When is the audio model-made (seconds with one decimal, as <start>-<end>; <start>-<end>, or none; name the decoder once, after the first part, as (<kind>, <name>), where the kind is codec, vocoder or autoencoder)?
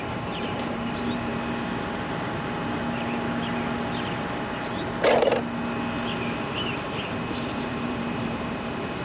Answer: 0.0-1.3 (vocoder, BigVGAN v2); 6.4-9.0